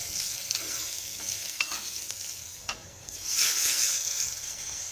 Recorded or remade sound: remade